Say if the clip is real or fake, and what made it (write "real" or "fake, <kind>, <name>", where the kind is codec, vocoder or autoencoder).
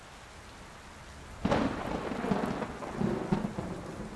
real